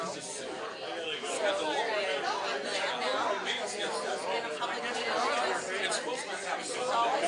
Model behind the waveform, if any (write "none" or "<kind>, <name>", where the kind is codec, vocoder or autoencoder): none